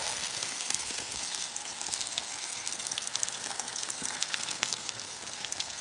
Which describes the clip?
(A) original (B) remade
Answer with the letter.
B